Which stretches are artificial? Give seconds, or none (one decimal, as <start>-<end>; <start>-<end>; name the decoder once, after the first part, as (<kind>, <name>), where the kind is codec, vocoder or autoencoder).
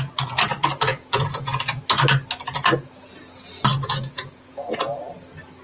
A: 0.9-1.8 (vocoder, Vocos); 3.7-5.0